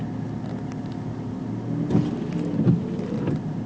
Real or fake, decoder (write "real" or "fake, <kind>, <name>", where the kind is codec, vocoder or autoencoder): real